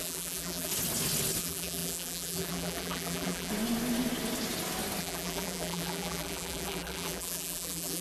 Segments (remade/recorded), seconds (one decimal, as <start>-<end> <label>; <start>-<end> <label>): 0.0-0.7 remade; 0.7-1.4 recorded; 1.4-3.5 remade; 3.5-5.0 recorded; 5.0-8.0 remade

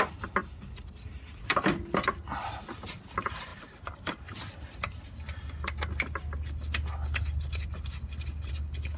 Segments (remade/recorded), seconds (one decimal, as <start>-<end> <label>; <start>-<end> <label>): 0.0-9.0 recorded

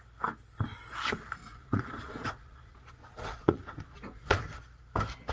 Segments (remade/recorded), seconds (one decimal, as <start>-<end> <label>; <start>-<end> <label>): 0.0-1.4 recorded; 1.4-4.4 remade; 4.4-5.3 recorded

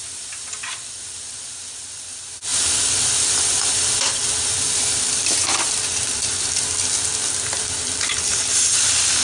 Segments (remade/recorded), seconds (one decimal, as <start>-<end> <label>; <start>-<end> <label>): 0.0-9.2 remade

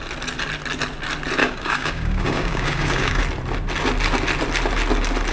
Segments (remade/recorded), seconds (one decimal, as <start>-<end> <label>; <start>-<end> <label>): 0.0-1.4 recorded; 1.4-3.2 remade; 3.2-5.3 recorded

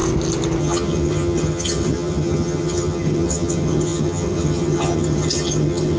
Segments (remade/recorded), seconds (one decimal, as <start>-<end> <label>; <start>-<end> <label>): 0.0-0.6 recorded; 0.6-6.0 remade

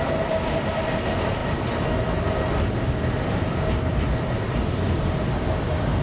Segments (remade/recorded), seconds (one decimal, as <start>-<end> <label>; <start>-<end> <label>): 0.0-6.0 recorded

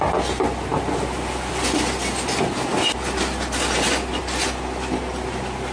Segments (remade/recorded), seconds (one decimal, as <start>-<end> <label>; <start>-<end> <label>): 0.0-5.7 recorded